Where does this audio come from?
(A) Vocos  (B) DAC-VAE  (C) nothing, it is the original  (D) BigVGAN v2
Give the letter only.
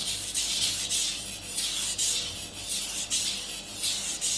C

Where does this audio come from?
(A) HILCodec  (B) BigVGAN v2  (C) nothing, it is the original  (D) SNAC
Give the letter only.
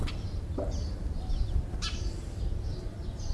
C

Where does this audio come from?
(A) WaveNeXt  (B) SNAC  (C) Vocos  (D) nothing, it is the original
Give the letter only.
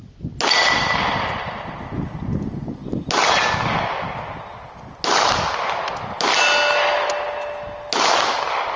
D